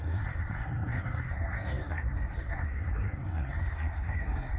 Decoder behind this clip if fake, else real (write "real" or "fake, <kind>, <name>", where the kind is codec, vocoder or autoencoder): fake, codec, SNAC